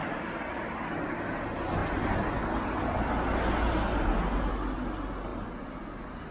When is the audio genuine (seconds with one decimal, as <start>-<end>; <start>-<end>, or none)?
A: 0.9-6.3